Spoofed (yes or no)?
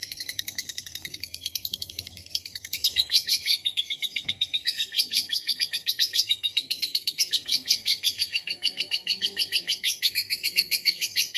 yes